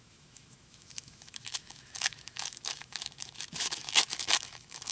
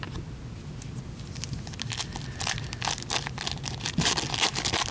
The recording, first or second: second